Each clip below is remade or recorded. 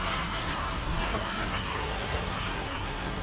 remade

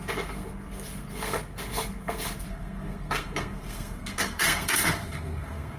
remade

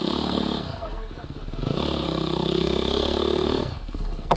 remade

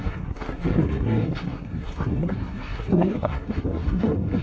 remade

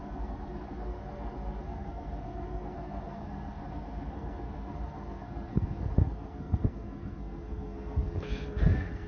remade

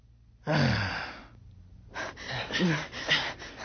recorded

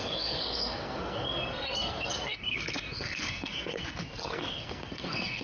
remade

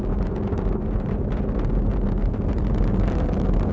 recorded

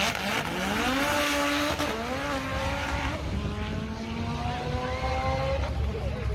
recorded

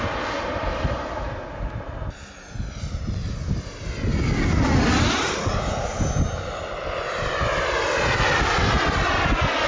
recorded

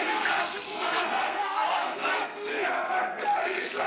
remade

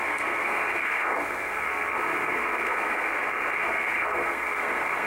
remade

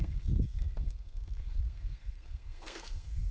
remade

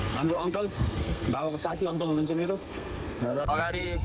remade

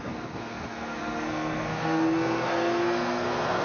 remade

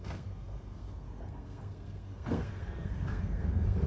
remade